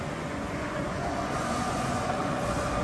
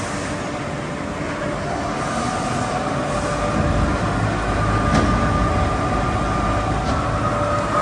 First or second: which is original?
second